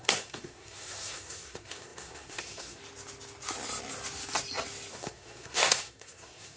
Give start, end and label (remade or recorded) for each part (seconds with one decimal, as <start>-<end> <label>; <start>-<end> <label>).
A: 0.0-2.8 remade; 2.8-4.9 recorded; 4.9-6.6 remade